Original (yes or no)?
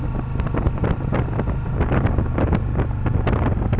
yes